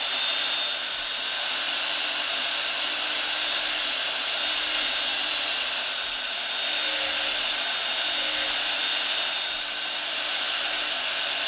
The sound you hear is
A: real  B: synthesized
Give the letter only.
A